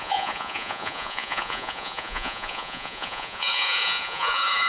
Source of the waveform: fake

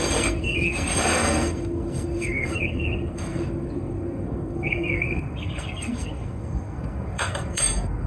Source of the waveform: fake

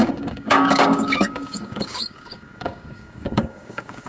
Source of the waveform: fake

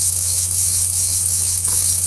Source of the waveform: fake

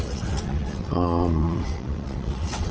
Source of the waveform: fake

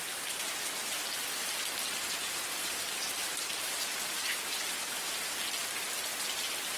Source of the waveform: real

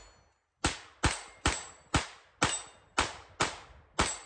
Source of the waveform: real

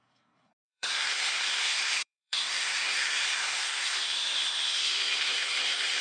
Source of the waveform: fake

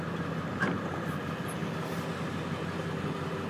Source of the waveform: fake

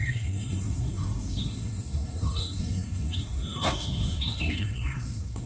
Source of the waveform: fake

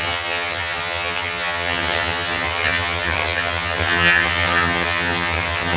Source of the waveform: fake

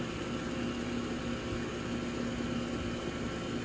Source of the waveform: real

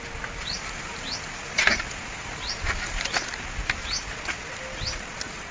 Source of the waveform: real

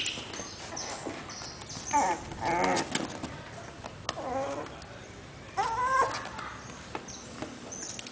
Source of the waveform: real